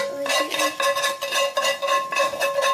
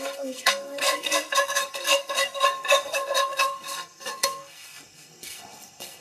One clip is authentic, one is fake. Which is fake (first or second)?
second